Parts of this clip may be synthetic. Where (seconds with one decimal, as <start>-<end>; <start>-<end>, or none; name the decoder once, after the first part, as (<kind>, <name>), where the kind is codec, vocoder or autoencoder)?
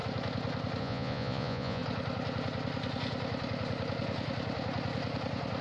0.8-1.8 (vocoder, Vocos)